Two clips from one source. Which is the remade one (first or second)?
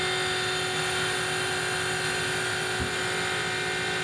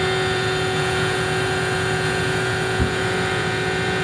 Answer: second